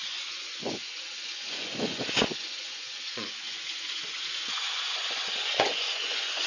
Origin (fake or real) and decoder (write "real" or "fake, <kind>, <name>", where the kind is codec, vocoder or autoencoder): fake, vocoder, Vocos